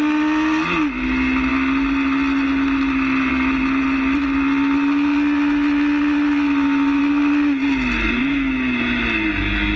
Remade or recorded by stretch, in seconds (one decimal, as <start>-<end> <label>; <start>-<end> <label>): 0.0-9.8 recorded